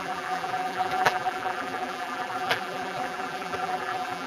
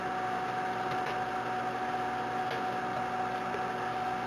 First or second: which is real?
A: second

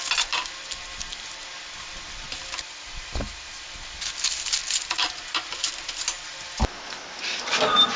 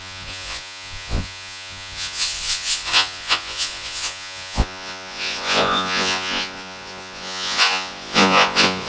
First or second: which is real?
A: first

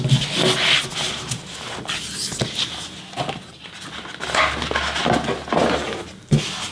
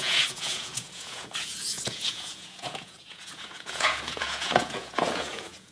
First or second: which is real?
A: first